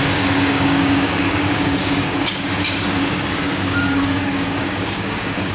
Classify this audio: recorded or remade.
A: remade